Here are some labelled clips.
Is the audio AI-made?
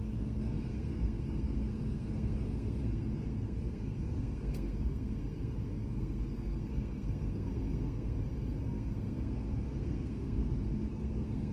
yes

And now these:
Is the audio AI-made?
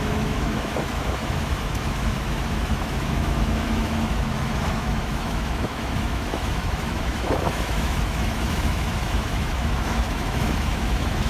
yes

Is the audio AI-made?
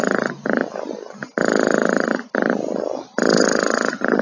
no